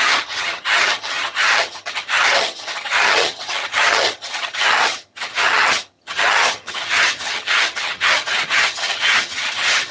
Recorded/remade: remade